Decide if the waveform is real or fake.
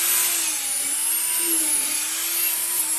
real